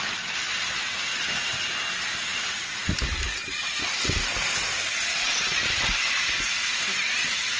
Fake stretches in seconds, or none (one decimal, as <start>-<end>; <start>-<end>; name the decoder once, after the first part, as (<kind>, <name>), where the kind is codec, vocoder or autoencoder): none